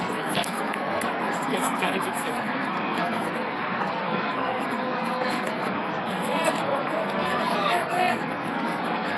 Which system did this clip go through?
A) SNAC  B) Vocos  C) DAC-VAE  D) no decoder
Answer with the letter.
A